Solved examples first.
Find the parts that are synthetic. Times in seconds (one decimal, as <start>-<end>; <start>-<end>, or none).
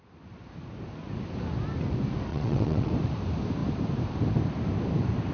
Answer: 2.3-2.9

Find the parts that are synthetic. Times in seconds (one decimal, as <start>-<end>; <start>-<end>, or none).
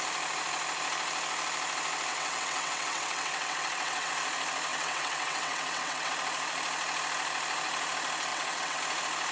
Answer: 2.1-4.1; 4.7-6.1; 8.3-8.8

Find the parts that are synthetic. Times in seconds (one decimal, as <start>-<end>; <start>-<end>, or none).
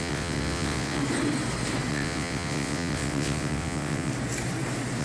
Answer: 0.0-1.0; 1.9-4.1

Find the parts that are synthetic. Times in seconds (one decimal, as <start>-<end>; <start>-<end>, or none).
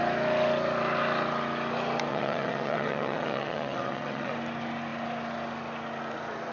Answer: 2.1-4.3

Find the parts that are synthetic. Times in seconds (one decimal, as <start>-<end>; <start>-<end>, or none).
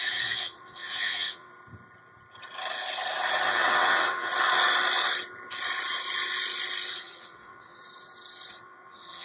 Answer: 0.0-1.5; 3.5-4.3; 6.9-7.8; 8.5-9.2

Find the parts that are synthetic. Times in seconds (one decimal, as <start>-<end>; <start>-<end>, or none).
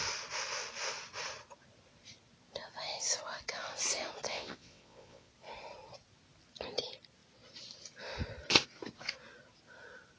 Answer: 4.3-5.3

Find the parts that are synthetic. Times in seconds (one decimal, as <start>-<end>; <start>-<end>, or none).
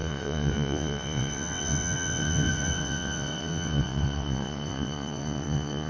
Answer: 0.0-5.9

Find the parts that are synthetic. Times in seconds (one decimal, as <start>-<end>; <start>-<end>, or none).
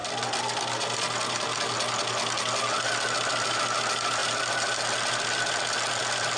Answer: none